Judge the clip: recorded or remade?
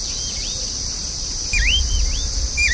recorded